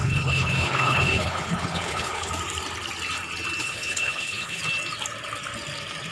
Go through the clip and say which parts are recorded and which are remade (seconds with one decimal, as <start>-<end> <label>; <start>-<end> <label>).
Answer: 0.0-2.3 remade; 2.3-3.6 recorded; 3.6-4.6 remade; 4.6-6.1 recorded